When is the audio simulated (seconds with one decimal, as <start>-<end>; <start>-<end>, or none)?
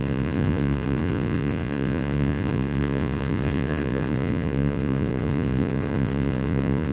0.0-6.9